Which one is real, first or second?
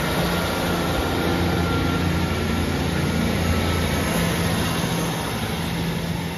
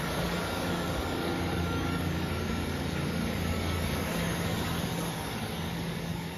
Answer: first